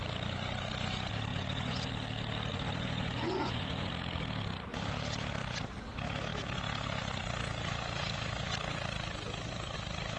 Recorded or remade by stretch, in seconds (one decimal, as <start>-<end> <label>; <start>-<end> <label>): 0.0-1.3 recorded; 1.3-1.9 remade; 1.9-2.5 recorded; 2.5-3.9 remade; 3.9-10.2 recorded